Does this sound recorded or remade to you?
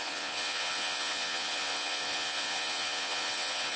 remade